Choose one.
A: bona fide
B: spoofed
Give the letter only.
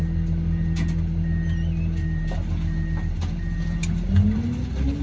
A